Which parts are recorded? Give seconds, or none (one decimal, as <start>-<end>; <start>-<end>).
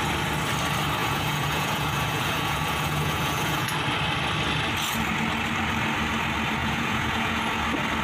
0.0-1.0; 3.7-6.6; 7.4-8.0